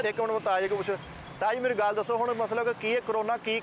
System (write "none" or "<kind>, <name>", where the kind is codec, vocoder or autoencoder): none